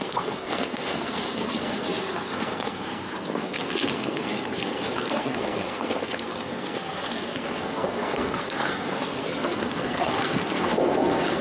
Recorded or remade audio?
remade